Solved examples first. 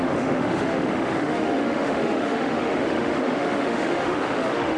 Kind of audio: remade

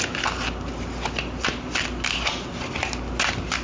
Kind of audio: recorded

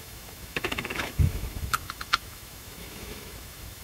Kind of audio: remade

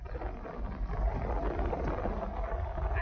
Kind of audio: recorded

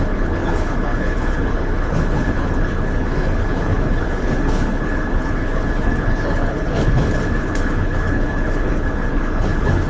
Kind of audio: remade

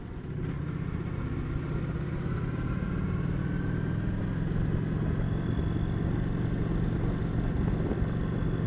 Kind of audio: recorded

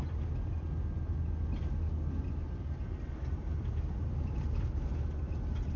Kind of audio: recorded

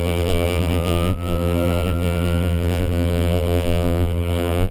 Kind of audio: remade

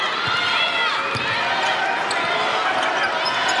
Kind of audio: recorded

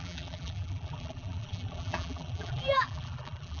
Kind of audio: remade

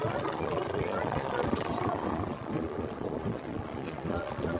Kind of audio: remade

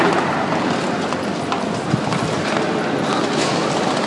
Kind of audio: recorded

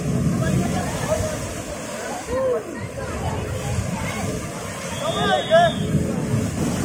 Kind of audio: recorded